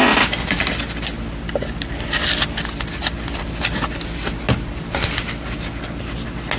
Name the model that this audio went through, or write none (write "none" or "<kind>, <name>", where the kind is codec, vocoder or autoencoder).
none